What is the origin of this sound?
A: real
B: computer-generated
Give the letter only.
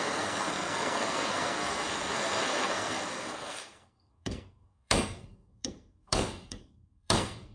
B